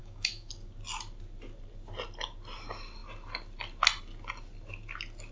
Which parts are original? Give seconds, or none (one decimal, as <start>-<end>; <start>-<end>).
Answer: 0.5-5.3